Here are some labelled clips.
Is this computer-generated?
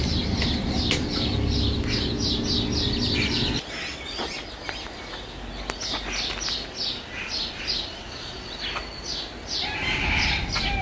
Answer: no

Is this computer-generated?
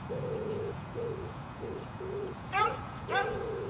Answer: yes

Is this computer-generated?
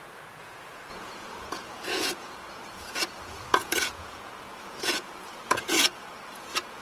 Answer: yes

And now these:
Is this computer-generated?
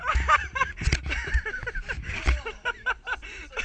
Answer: no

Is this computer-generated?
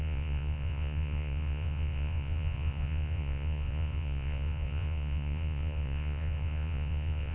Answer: yes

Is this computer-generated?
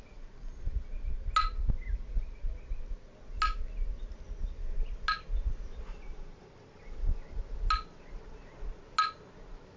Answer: no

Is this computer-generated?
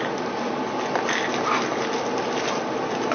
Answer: no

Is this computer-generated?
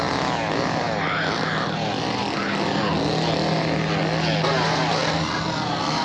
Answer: no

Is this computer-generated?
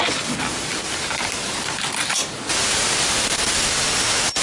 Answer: no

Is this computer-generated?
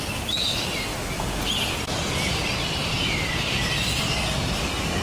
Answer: no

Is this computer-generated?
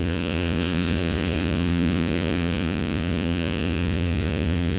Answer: yes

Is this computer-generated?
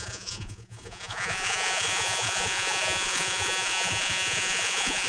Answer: yes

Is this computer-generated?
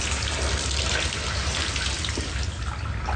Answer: no